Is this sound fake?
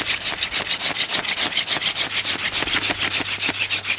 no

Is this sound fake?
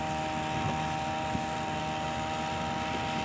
no